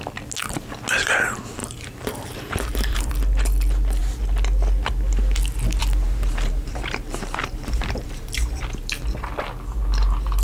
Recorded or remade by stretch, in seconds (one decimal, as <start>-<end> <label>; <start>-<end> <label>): 0.0-1.6 recorded; 1.6-3.1 remade; 3.1-5.8 recorded; 5.8-8.6 remade; 8.6-10.4 recorded

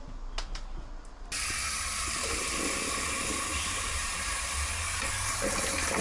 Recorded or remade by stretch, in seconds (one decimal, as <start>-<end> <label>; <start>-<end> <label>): 0.0-3.5 recorded; 3.5-4.5 remade; 4.5-6.0 recorded

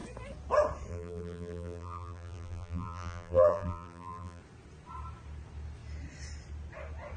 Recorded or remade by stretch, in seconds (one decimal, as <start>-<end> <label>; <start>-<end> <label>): 0.0-0.9 recorded; 0.9-4.4 remade; 4.4-7.2 recorded

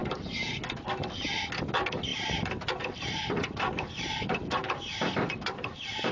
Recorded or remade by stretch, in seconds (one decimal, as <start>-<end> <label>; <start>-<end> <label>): 0.0-2.1 recorded; 2.1-6.1 remade

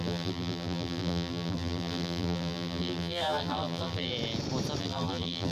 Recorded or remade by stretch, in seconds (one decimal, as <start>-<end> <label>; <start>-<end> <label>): 0.0-4.1 remade; 4.1-4.8 recorded; 4.8-5.5 remade

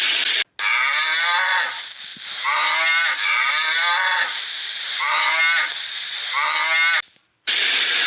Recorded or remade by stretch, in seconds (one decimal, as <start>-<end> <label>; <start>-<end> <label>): 0.0-0.9 recorded; 0.9-1.5 remade; 1.5-2.1 recorded; 2.1-5.4 remade; 5.4-8.1 recorded

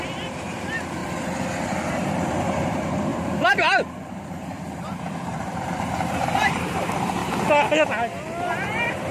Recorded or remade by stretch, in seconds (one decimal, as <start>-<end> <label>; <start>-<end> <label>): 0.0-1.0 remade; 1.0-1.9 recorded; 1.9-7.2 remade; 7.2-8.4 recorded; 8.4-9.1 remade